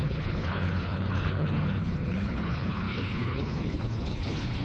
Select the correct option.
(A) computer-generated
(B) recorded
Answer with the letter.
A